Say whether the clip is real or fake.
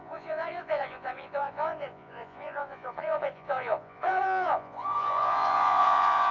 fake